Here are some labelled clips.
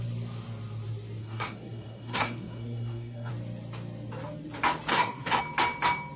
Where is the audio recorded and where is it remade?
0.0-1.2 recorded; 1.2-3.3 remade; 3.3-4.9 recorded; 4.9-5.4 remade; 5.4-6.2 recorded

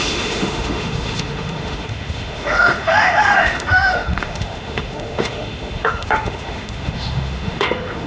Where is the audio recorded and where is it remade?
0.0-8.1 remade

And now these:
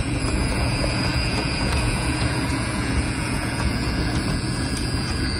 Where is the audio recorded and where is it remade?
0.0-5.4 remade

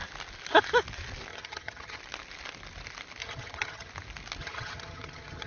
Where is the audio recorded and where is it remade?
0.0-1.3 recorded; 1.3-2.0 remade; 2.0-3.2 recorded; 3.2-3.9 remade; 3.9-4.4 recorded; 4.4-5.5 remade

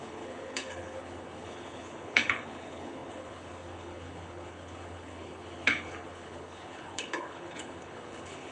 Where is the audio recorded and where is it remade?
0.0-8.5 remade

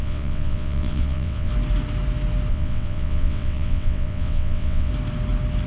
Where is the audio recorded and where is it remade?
0.0-1.5 remade; 1.5-2.5 recorded; 2.5-4.9 remade; 4.9-5.7 recorded